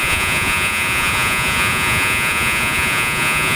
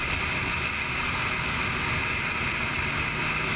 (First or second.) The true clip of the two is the second